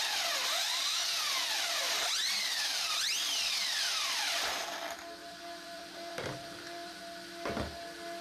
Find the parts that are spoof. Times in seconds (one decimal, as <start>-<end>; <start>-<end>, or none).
2.2-2.9; 5.2-7.0